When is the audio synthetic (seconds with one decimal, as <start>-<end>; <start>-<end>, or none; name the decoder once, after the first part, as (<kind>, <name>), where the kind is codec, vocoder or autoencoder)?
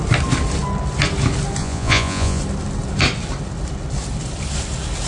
1.6-2.4 (vocoder, Vocos)